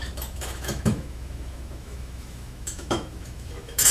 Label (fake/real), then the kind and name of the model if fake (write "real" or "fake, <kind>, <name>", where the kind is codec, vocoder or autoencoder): fake, autoencoder, DAC-VAE